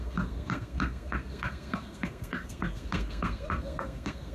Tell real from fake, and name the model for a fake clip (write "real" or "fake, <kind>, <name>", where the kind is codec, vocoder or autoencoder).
fake, codec, SNAC